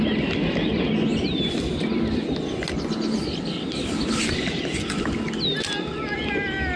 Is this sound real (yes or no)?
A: yes